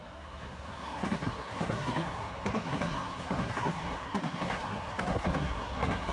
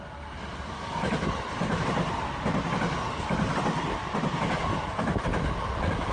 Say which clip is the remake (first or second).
first